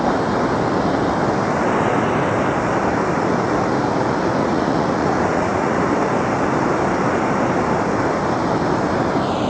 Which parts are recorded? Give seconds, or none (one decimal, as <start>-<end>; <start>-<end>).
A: 0.0-4.4; 5.9-9.5